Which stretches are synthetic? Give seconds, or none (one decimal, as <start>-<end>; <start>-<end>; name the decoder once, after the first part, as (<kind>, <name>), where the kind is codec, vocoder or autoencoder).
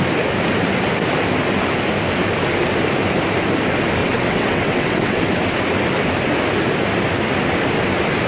4.0-5.2 (vocoder, WaveNeXt)